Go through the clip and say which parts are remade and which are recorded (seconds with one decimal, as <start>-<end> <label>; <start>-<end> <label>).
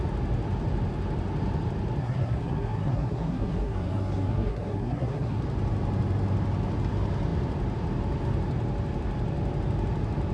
0.0-2.0 recorded; 2.0-5.4 remade; 5.4-10.3 recorded